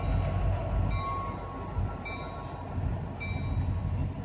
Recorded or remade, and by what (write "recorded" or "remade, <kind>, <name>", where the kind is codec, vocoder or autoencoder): recorded